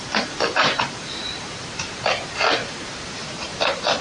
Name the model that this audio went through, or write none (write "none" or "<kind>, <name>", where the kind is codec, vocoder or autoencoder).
vocoder, BigVGAN v2